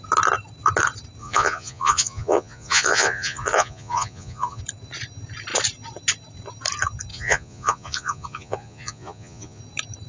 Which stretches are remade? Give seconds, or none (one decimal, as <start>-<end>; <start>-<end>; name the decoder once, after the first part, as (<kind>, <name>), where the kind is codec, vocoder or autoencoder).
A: 1.2-4.6 (vocoder, Vocos); 7.1-9.6